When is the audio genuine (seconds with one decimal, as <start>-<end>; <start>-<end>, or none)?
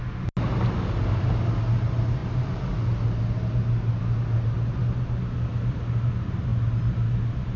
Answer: 0.0-7.6